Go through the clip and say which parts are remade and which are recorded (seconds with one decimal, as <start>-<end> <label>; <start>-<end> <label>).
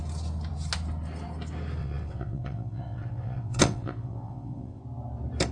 0.0-1.8 recorded; 1.8-4.8 remade; 4.8-5.5 recorded